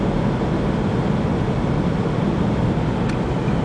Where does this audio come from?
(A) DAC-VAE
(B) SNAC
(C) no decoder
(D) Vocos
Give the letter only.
C